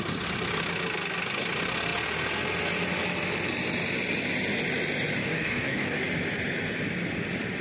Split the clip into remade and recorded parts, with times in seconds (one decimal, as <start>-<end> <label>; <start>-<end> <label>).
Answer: 0.0-5.2 recorded; 5.2-6.0 remade; 6.0-7.6 recorded